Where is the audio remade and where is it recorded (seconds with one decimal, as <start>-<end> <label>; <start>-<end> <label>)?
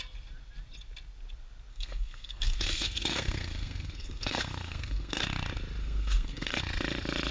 0.0-1.7 recorded; 1.7-5.2 remade; 5.2-5.8 recorded; 5.8-6.6 remade; 6.6-7.3 recorded